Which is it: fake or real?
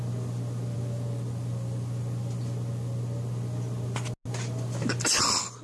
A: real